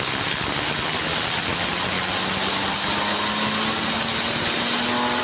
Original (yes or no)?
yes